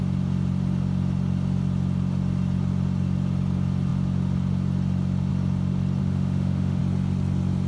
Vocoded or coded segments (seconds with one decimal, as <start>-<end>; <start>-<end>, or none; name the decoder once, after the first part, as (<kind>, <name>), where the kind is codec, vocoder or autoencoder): 6.0-6.8 (autoencoder, DAC-VAE)